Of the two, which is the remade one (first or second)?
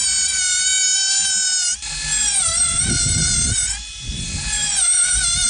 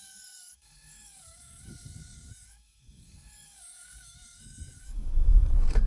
second